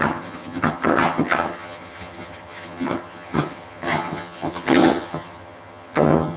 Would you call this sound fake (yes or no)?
yes